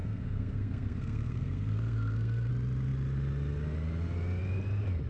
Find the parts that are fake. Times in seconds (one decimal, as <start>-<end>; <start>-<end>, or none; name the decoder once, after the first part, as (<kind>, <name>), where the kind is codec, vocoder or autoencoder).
0.0-2.5 (codec, SNAC)